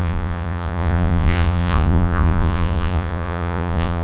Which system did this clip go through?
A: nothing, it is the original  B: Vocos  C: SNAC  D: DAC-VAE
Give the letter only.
B